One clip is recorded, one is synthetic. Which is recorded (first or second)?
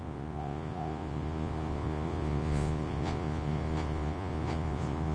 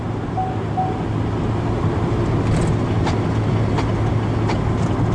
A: second